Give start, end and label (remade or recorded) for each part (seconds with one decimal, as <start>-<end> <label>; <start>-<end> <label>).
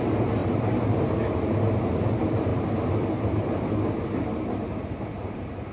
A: 0.0-0.4 recorded; 0.4-1.0 remade; 1.0-5.7 recorded